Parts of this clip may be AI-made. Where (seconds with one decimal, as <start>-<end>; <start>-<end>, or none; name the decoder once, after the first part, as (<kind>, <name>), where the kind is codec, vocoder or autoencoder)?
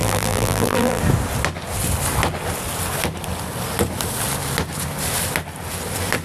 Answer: 0.0-1.0 (vocoder, BigVGAN v2)